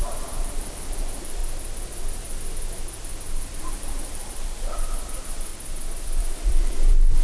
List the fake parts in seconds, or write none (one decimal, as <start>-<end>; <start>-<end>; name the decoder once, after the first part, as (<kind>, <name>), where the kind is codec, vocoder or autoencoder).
0.0-1.4 (vocoder, BigVGAN v2); 3.6-5.5; 6.2-7.2